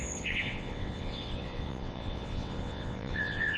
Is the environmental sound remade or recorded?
remade